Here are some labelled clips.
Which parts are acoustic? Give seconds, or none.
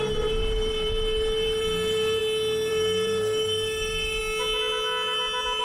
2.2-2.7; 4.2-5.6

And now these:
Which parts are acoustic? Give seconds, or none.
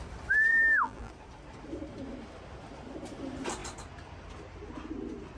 0.0-0.5; 1.1-5.4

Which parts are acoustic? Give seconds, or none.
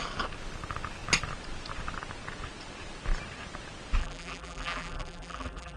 0.0-4.0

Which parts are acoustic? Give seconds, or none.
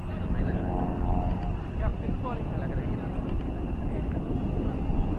0.0-5.2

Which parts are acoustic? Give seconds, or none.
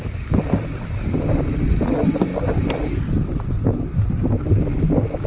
0.0-5.3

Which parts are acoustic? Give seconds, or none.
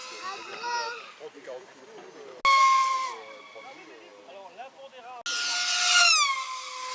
0.0-2.8; 3.4-6.9